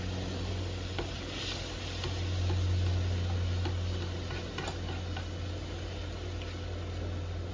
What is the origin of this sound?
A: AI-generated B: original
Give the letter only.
B